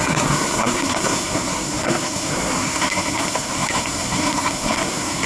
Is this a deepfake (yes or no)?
yes